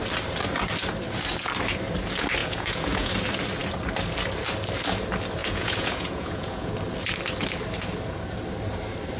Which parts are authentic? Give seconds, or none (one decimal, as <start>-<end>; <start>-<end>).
0.0-2.4; 3.1-5.4; 6.7-9.2